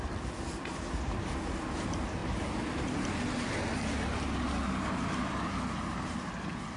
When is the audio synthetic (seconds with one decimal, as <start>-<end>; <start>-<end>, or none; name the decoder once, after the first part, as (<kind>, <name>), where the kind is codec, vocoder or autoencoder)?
none